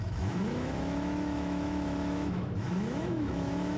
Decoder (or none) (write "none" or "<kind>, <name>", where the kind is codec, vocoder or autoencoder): autoencoder, DAC-VAE